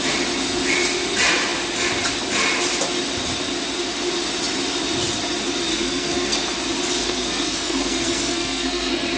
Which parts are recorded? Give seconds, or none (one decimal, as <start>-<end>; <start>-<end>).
0.0-5.7; 6.4-7.0